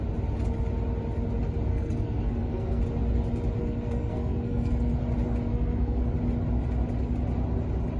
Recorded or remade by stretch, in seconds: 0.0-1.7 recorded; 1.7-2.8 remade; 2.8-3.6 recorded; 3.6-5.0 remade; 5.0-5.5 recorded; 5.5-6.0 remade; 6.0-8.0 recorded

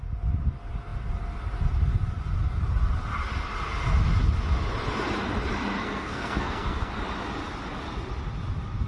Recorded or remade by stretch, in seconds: 0.0-5.8 recorded; 5.8-6.9 remade; 6.9-8.9 recorded

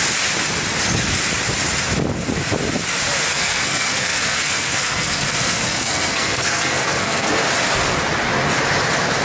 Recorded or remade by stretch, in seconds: 0.0-3.3 recorded; 3.3-7.3 remade; 7.3-9.2 recorded